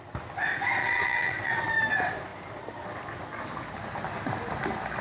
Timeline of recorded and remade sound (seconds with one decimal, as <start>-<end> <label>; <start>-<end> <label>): 0.0-0.8 recorded; 0.8-1.7 remade; 1.7-5.0 recorded